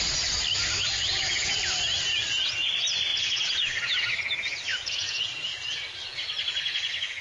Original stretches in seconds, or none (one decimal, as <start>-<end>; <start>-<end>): 0.0-4.7; 5.3-7.2